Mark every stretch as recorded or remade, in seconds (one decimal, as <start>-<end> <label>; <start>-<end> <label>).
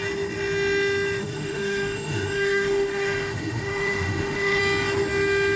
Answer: 0.0-1.2 recorded; 1.2-4.6 remade; 4.6-5.6 recorded